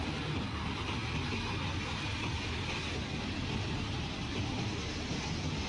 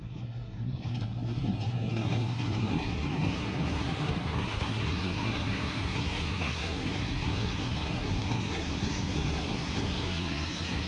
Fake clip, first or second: second